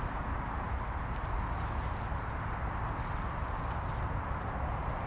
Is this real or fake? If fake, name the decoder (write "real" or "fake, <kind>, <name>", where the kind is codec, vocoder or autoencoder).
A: real